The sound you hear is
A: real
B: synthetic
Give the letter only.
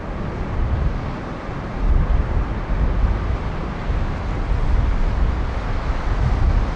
A